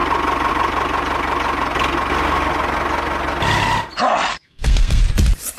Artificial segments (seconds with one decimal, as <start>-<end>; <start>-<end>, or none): 4.3-5.0